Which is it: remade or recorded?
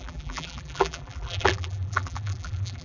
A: remade